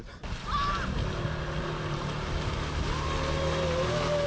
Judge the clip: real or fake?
real